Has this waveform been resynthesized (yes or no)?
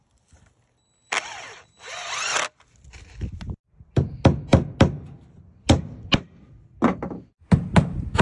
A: no